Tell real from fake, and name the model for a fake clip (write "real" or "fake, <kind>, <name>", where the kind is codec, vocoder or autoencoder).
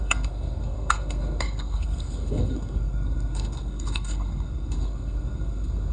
fake, codec, SNAC